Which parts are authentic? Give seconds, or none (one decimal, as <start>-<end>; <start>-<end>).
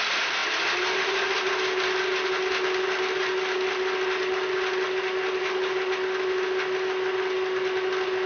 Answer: 0.0-8.3